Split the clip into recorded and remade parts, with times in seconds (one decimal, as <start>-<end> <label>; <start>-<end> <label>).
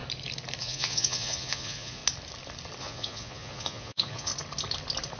0.0-0.6 recorded; 0.6-2.0 remade; 2.0-2.8 recorded; 2.8-4.3 remade; 4.3-5.2 recorded